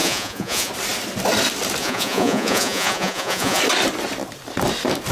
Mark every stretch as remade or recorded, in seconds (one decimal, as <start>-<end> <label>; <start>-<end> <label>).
0.0-0.7 remade; 0.7-1.8 recorded; 1.8-3.6 remade; 3.6-5.1 recorded